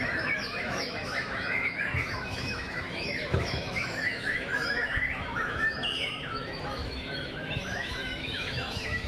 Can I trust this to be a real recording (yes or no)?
no